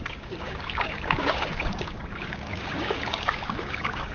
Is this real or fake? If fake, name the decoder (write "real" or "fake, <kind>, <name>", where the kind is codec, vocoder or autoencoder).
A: fake, codec, DAC